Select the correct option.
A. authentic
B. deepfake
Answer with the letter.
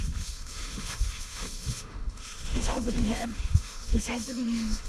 B